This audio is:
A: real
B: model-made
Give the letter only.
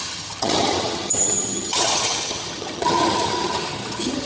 B